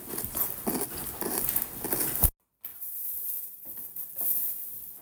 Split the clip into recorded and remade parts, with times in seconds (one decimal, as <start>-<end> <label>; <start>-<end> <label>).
0.0-1.0 recorded; 1.0-1.6 remade; 1.6-2.7 recorded; 2.7-3.6 remade; 3.6-5.0 recorded